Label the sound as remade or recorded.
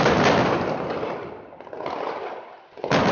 recorded